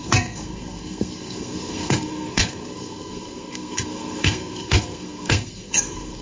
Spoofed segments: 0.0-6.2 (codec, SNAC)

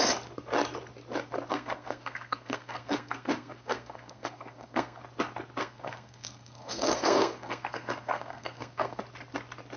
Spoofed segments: 1.5-5.0 (codec, SNAC); 5.6-9.0

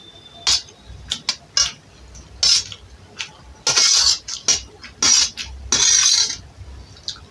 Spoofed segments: none

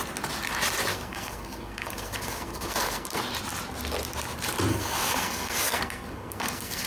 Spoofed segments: 0.9-3.2 (codec, SNAC); 4.7-6.9

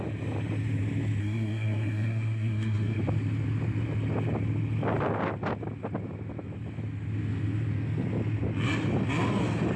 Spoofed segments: 1.2-3.0 (codec, SNAC)

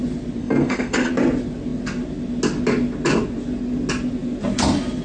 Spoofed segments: 0.4-1.1 (codec, SNAC)

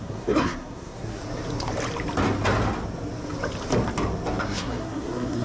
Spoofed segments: 0.0-1.2 (codec, SNAC); 4.4-5.4